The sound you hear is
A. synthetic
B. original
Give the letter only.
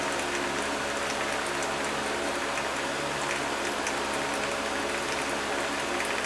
B